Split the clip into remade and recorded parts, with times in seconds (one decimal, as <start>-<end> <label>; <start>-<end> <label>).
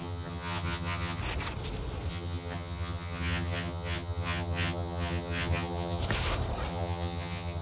0.0-1.2 remade; 1.2-2.1 recorded; 2.1-6.0 remade; 6.0-6.7 recorded; 6.7-7.6 remade